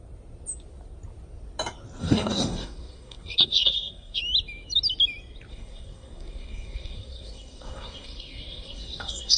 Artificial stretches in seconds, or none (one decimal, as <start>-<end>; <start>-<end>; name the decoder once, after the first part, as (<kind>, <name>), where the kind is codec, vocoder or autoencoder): 2.0-4.2 (codec, SNAC); 5.5-9.4